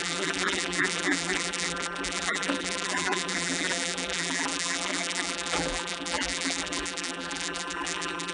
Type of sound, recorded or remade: remade